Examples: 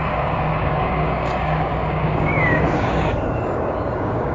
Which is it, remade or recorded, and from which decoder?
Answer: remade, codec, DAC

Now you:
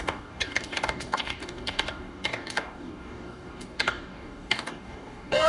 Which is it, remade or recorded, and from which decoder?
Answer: remade, codec, DAC